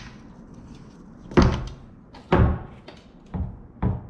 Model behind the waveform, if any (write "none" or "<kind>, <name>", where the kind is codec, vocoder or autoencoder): none